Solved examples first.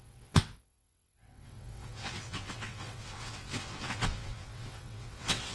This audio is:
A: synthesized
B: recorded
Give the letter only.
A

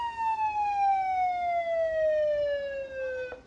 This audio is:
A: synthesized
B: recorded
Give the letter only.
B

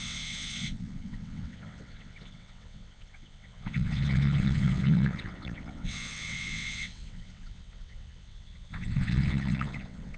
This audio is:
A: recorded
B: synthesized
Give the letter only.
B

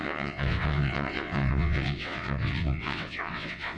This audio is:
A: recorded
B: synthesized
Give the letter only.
B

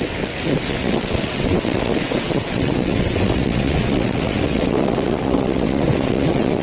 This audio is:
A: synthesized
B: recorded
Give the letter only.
A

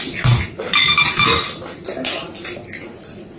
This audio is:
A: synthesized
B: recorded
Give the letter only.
B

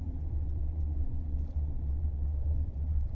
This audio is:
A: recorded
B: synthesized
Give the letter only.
B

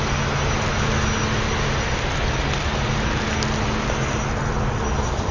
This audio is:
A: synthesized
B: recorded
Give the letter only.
B